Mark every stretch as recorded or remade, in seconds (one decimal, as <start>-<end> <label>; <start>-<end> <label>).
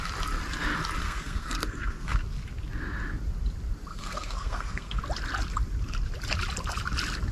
0.0-1.0 recorded; 1.0-2.2 remade; 2.2-3.9 recorded; 3.9-5.0 remade; 5.0-7.3 recorded